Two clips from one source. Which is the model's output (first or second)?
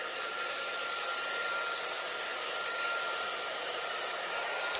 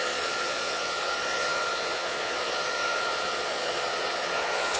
second